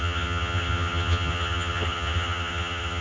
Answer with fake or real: fake